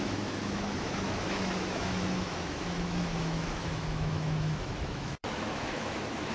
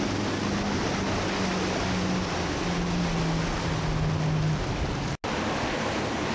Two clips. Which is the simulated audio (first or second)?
first